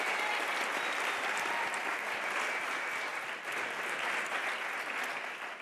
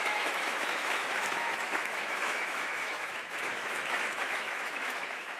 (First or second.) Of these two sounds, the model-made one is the second